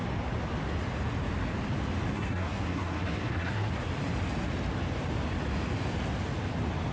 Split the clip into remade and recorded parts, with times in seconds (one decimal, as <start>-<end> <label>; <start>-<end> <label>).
0.0-2.1 recorded; 2.1-3.7 remade; 3.7-6.9 recorded